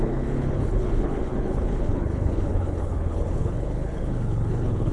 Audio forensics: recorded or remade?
remade